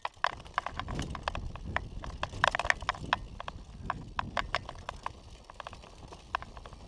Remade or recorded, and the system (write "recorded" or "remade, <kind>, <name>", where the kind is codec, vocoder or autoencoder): recorded